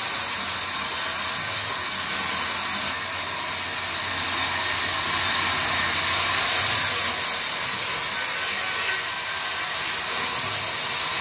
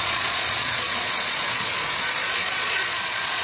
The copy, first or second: second